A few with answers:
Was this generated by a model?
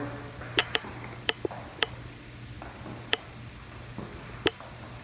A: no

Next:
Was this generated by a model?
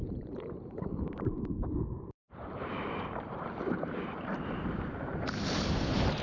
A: yes